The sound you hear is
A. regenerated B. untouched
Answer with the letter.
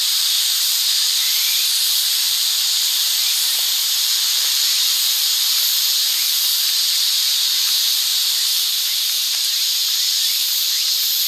A